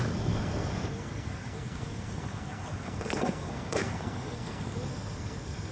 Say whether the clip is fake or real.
fake